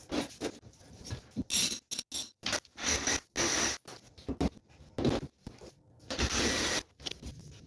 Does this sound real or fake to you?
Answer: real